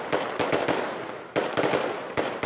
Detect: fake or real real